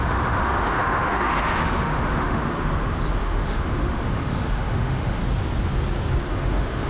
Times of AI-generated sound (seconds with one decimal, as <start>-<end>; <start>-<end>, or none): 0.0-2.4; 3.2-5.2; 6.3-6.9